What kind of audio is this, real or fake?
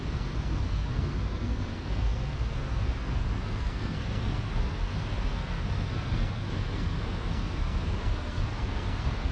fake